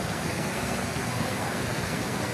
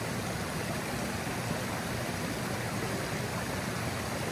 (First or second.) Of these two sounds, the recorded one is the second